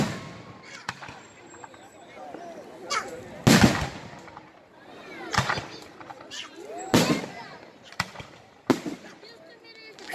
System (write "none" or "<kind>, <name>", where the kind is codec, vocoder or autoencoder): none